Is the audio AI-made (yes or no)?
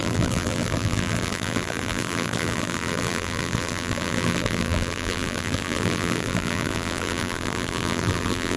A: yes